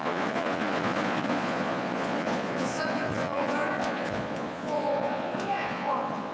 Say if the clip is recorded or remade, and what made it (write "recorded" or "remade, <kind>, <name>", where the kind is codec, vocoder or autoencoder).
remade, vocoder, Vocos